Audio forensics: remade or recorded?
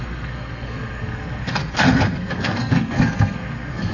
remade